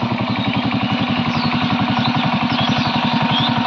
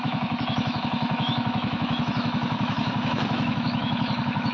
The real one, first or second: first